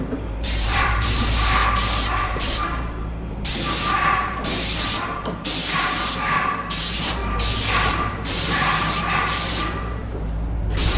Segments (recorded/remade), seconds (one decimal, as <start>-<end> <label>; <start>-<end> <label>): 0.0-1.6 remade; 1.6-2.2 recorded; 2.2-7.2 remade; 7.2-7.9 recorded; 7.9-11.0 remade